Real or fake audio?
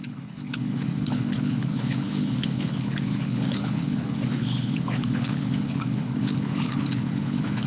fake